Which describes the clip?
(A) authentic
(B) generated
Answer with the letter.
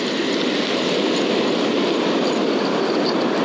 A